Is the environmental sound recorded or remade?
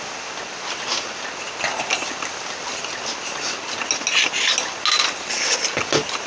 recorded